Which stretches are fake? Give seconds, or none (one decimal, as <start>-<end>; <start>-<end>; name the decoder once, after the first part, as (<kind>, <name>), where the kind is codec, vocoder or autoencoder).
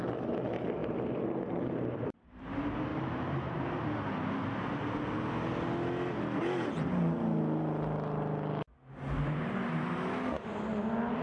0.8-2.3 (vocoder, BigVGAN v2); 2.9-3.6